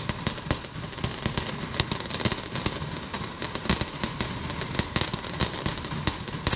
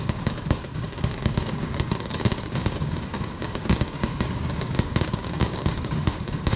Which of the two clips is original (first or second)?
first